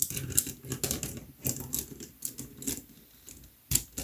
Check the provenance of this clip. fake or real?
real